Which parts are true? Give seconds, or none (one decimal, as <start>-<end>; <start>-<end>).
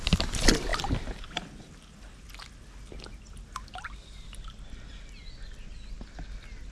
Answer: 0.0-0.7; 1.3-6.7